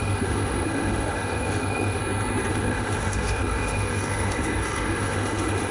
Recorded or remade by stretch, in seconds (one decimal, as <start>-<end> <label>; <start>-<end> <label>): 0.0-2.0 remade; 2.0-2.5 recorded; 2.5-5.7 remade